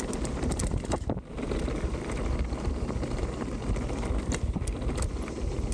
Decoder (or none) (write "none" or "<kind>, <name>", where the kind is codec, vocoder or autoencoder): none